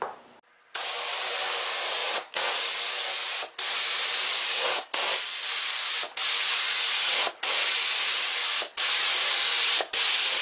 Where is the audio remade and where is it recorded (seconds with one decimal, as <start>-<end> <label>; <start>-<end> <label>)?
0.0-10.4 recorded